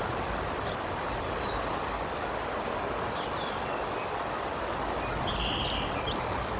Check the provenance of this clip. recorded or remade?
recorded